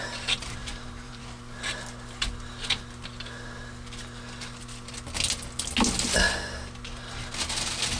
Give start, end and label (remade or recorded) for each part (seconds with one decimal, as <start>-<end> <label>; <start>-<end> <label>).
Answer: 0.0-0.6 recorded; 0.6-1.2 remade; 1.2-8.0 recorded